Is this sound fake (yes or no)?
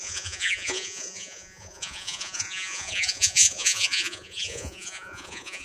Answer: yes